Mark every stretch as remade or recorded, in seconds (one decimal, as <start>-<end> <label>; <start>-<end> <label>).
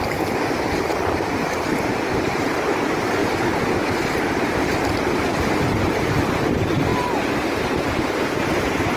0.0-1.9 recorded; 1.9-2.7 remade; 2.7-3.2 recorded; 3.2-3.9 remade; 3.9-5.3 recorded; 5.3-6.2 remade; 6.2-6.9 recorded; 6.9-8.3 remade; 8.3-9.0 recorded